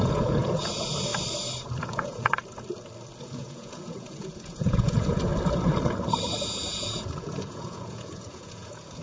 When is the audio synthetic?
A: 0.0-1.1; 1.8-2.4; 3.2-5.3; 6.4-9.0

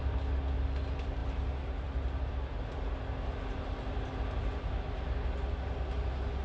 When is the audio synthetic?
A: none

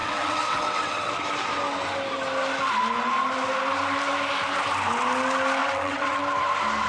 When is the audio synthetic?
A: 0.0-1.1; 5.6-6.2

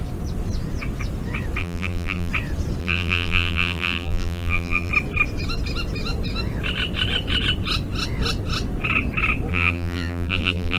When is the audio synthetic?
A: 1.6-2.3; 2.8-4.9; 9.5-10.8